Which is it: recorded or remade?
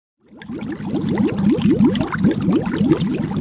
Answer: recorded